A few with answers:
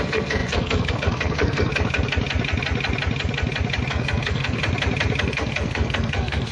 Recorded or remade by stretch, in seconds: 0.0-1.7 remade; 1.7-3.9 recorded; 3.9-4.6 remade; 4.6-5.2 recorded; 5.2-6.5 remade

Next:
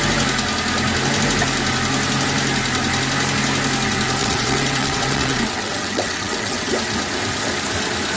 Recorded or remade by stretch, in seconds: 0.0-4.2 recorded; 4.2-6.7 remade; 6.7-8.2 recorded